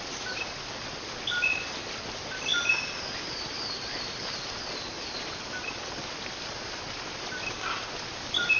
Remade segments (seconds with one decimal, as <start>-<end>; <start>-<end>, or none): none